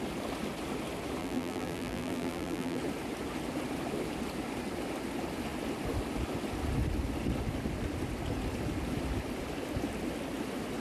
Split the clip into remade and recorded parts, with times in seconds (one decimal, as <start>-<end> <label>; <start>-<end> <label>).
0.0-1.2 recorded; 1.2-2.8 remade; 2.8-10.8 recorded